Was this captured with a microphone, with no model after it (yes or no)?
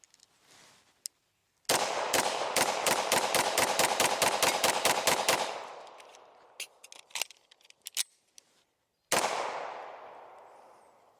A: yes